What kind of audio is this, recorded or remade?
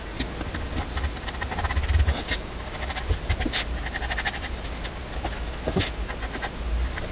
recorded